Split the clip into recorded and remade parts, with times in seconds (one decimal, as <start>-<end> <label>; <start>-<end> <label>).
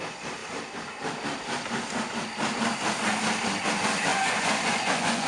0.0-4.1 recorded; 4.1-5.3 remade